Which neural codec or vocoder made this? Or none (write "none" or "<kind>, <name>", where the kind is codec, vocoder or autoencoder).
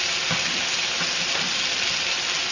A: none